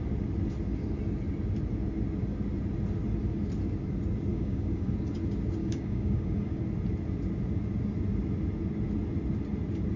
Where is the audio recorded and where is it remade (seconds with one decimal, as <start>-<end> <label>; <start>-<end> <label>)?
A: 0.0-4.3 recorded; 4.3-4.9 remade; 4.9-5.6 recorded; 5.6-6.6 remade; 6.6-10.0 recorded